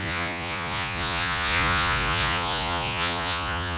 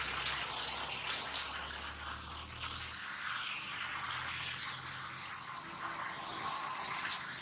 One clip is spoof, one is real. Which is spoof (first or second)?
first